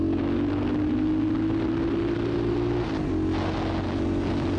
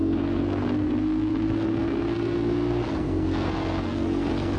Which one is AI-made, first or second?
second